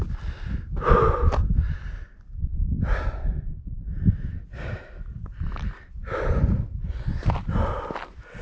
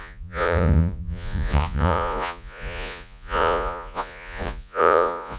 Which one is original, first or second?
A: first